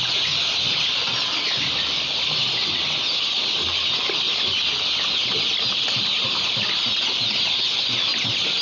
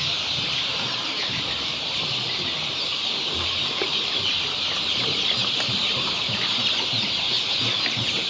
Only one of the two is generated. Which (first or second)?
second